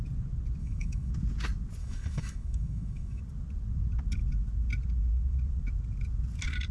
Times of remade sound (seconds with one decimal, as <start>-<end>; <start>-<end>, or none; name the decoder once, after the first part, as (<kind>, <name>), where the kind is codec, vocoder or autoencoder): 0.6-1.1 (autoencoder, DAC-VAE); 1.8-3.2